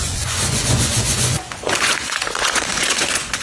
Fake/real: fake